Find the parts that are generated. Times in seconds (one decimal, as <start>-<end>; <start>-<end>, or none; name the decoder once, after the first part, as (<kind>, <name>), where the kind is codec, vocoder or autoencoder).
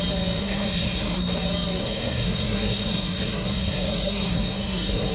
0.4-1.2 (codec, SNAC); 1.8-5.1